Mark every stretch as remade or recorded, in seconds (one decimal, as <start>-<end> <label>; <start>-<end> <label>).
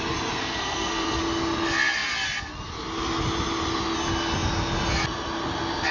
0.0-0.4 recorded; 0.4-1.2 remade; 1.2-5.9 recorded